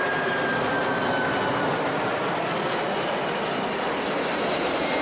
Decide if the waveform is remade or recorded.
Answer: recorded